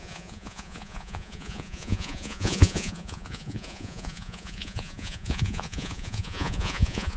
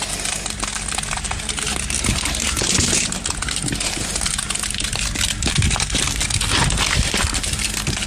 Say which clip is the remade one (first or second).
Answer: first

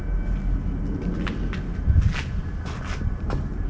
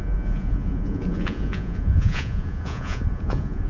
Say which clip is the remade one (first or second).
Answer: second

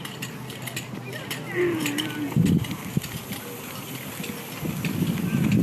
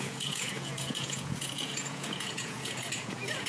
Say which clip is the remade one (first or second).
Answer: second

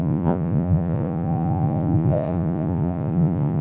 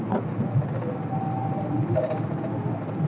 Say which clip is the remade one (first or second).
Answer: first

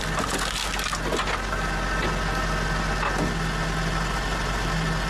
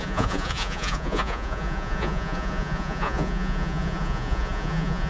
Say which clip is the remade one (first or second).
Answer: second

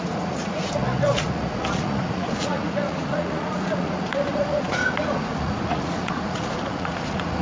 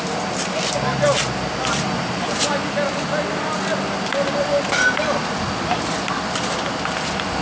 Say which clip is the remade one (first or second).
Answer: first